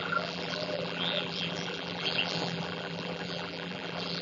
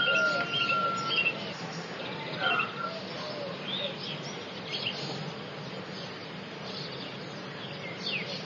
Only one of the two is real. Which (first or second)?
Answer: second